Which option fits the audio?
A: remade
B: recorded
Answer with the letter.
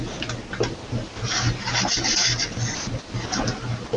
B